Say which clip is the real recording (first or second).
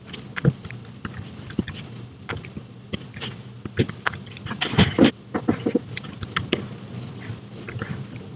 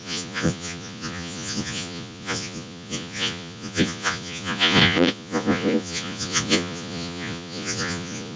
first